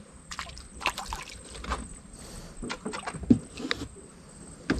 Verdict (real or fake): real